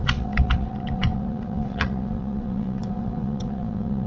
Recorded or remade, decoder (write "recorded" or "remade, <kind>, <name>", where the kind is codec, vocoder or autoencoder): remade, vocoder, WaveNeXt